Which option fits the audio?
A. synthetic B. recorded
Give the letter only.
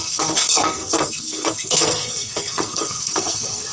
A